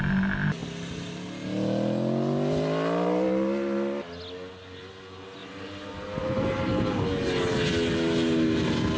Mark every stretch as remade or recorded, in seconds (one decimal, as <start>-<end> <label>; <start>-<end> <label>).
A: 0.0-9.0 recorded